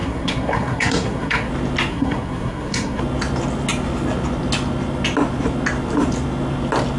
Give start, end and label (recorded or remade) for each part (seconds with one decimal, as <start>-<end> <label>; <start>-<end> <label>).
0.0-1.5 remade; 1.5-1.9 recorded; 1.9-3.0 remade; 3.0-7.0 recorded